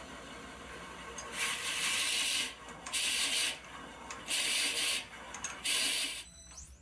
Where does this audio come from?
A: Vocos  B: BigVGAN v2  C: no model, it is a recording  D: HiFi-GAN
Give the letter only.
B